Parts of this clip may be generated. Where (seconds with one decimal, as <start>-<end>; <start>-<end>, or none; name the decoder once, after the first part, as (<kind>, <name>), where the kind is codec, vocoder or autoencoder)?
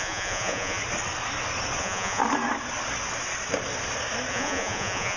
0.0-0.8 (vocoder, Vocos); 1.8-2.2; 4.3-5.2